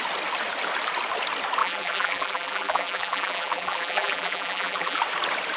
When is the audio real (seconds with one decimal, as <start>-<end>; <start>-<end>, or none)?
0.0-1.6; 5.0-5.6